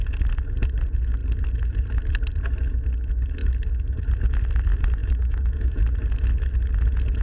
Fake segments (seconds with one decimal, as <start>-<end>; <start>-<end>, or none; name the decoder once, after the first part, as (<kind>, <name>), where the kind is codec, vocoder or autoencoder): 5.0-5.8 (autoencoder, DAC-VAE)